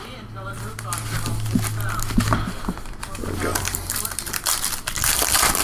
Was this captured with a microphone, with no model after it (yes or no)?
yes